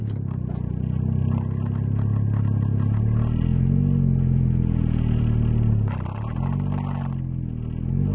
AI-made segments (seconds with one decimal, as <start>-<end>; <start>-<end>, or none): 3.5-5.2

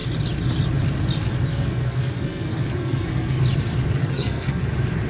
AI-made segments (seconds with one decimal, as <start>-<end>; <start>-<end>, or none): 1.5-3.4; 4.0-4.6

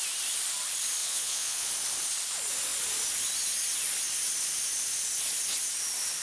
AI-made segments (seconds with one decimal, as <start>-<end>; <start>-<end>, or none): 1.0-1.7

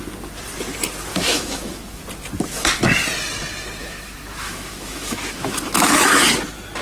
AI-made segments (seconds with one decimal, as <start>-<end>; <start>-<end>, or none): 1.1-2.0; 3.8-6.3

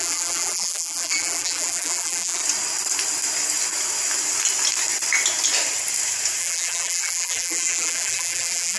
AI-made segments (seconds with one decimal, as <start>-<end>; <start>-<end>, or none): 0.0-2.4; 6.4-8.8